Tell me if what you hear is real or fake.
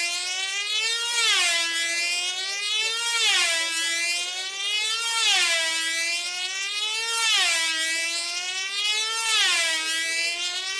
real